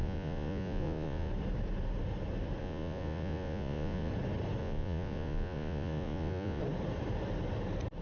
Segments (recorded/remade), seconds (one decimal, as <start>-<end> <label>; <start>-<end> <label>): 0.0-1.3 remade; 1.3-2.6 recorded; 2.6-4.1 remade; 4.1-4.6 recorded; 4.6-6.6 remade; 6.6-8.0 recorded